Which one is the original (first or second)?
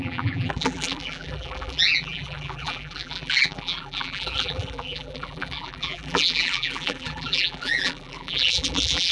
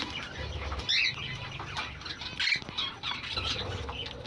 second